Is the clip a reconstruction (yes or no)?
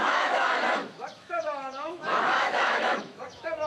yes